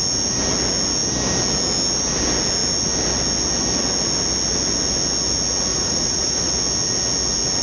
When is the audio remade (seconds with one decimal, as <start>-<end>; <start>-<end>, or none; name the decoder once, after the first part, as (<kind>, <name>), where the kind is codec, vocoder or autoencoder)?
5.7-6.5 (vocoder, Vocos)